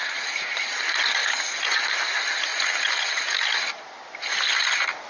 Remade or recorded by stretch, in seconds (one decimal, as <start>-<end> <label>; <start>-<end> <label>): 0.0-5.1 recorded